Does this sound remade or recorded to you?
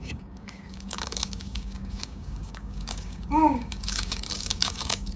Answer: remade